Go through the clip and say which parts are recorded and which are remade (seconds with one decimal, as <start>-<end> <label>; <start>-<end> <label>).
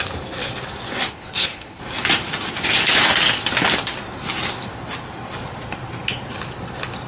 0.0-1.1 recorded; 1.1-1.8 remade; 1.8-7.1 recorded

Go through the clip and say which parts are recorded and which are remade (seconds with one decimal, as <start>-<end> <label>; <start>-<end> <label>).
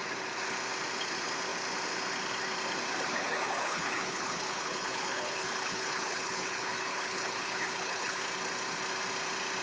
0.0-3.1 recorded; 3.1-8.2 remade; 8.2-9.6 recorded